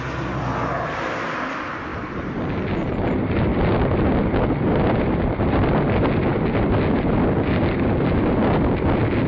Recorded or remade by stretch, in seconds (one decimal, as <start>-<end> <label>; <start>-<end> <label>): 0.0-9.3 recorded